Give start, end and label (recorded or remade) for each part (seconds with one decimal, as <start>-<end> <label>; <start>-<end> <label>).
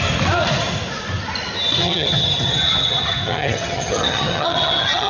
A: 0.0-1.8 recorded; 1.8-5.1 remade